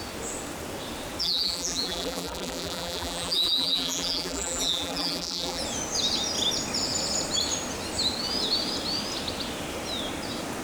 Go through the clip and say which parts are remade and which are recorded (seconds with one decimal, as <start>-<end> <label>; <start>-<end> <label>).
0.0-1.2 recorded; 1.2-5.6 remade; 5.6-10.6 recorded